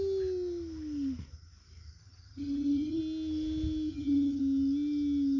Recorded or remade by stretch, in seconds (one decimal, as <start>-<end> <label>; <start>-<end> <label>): 0.0-2.0 recorded; 2.0-3.0 remade; 3.0-3.9 recorded; 3.9-4.4 remade; 4.4-5.4 recorded